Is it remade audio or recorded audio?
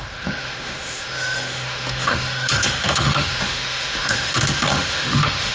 remade